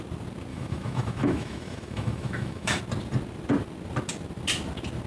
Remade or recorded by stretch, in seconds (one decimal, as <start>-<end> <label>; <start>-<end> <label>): 0.0-0.5 recorded; 0.5-2.8 remade; 2.8-5.1 recorded